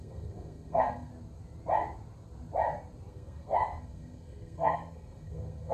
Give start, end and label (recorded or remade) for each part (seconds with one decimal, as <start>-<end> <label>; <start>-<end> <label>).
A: 0.0-1.1 remade; 1.1-3.1 recorded; 3.1-5.7 remade